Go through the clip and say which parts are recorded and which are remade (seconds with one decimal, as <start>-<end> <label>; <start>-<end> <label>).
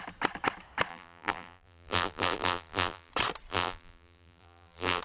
0.0-0.9 recorded; 0.9-3.1 remade; 3.1-3.5 recorded; 3.5-5.0 remade